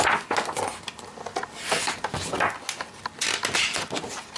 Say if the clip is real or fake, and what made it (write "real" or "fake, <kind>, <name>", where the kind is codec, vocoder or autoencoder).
real